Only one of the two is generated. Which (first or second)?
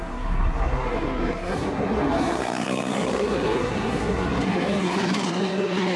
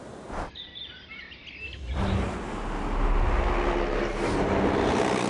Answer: first